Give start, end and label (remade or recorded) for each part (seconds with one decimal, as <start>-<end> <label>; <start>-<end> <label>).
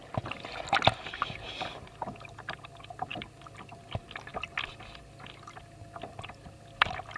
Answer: 0.0-7.2 recorded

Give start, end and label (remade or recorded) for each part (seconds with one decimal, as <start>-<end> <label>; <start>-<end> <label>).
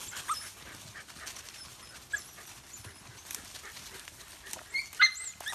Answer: 0.0-5.5 recorded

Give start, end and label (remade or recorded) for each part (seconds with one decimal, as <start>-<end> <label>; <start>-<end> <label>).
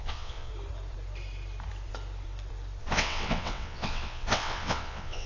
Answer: 0.0-0.5 remade; 0.5-2.8 recorded; 2.8-5.3 remade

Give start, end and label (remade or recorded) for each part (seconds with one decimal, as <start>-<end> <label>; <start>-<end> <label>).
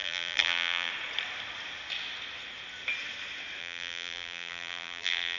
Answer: 0.0-0.9 remade; 0.9-3.6 recorded; 3.6-5.4 remade